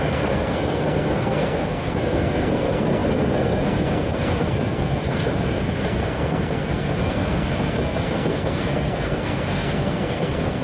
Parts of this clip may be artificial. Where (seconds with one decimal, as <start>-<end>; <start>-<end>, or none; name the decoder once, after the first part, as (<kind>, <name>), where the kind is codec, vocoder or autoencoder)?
0.0-10.6 (codec, SNAC)